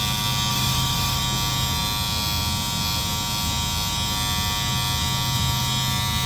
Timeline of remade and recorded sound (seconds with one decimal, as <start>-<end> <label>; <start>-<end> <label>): 0.0-0.5 recorded; 0.5-1.2 remade; 1.2-6.3 recorded